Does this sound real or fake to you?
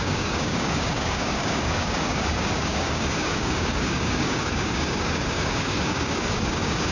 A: fake